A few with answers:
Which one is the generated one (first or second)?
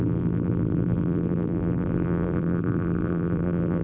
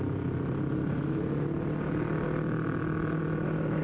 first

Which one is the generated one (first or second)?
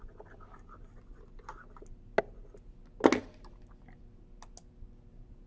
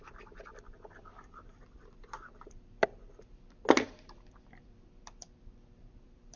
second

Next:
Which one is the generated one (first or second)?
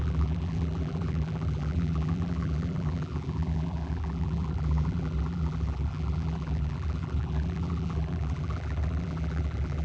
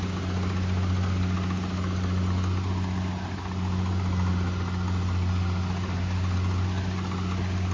first